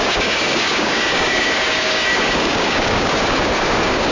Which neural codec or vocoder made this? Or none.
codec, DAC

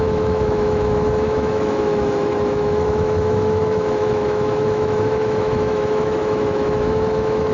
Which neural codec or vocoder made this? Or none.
autoencoder, DAC-VAE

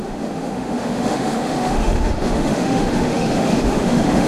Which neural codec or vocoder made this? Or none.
autoencoder, DAC-VAE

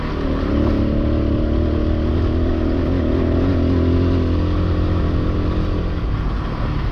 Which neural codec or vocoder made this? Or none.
none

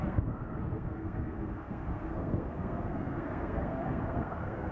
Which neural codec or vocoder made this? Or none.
codec, SNAC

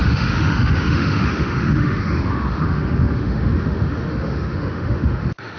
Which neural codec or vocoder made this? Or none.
autoencoder, DAC-VAE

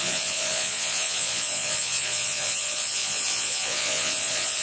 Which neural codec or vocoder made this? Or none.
vocoder, Vocos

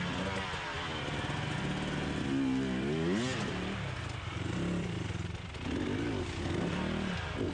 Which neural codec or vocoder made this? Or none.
none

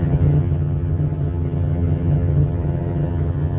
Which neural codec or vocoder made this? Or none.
vocoder, HiFi-GAN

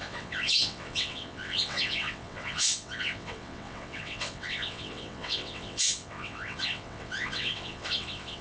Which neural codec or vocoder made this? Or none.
vocoder, WaveNeXt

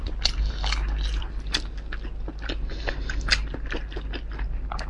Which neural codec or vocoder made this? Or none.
none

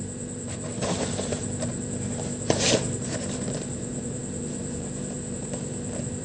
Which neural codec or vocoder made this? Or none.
vocoder, BigVGAN v2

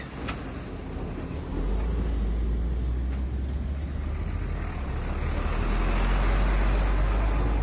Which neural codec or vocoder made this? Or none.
none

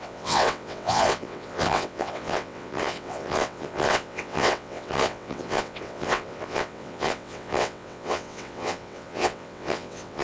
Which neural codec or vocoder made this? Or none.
vocoder, WaveNeXt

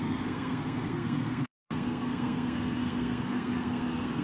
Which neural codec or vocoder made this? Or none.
codec, SNAC